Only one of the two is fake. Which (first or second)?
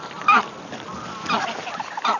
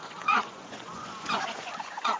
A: second